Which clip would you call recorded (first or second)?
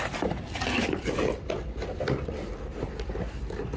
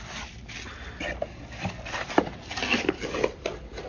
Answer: second